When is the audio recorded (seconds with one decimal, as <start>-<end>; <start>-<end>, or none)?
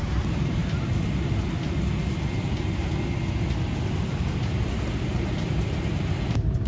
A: 0.6-3.9; 4.5-5.5